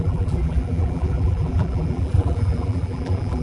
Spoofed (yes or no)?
yes